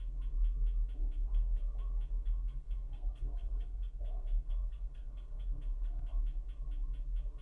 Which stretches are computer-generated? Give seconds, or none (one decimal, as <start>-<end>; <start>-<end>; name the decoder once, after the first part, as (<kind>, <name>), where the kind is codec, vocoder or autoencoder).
1.0-1.6 (codec, SNAC); 2.2-6.2